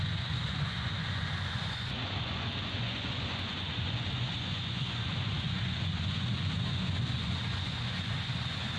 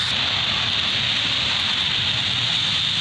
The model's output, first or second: first